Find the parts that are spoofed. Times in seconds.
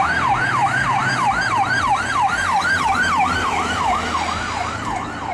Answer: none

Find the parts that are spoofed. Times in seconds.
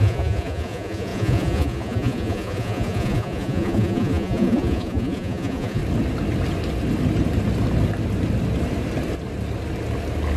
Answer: 0.0-5.8 (vocoder, Vocos)